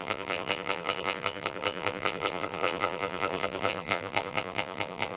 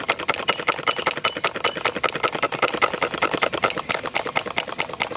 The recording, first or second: second